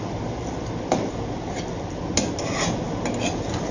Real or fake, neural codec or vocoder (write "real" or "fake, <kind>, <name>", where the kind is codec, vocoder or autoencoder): real